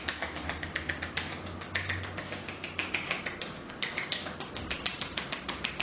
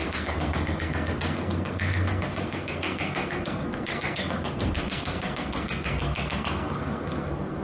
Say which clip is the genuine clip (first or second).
first